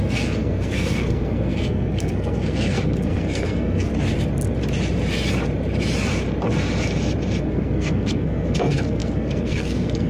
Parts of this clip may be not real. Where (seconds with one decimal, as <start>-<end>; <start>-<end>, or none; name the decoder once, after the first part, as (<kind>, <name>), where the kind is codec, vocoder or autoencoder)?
0.0-3.9 (codec, SNAC); 7.4-10.1